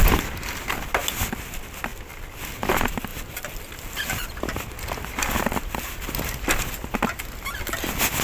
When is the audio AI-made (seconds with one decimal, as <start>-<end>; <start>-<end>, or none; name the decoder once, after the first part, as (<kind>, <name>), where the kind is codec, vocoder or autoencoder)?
none